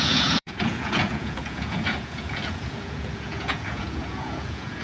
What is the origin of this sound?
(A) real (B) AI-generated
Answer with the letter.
B